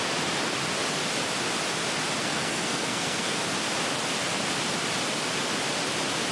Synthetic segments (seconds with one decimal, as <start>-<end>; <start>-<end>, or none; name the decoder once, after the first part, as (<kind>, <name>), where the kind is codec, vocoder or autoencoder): 2.2-3.4 (codec, SNAC)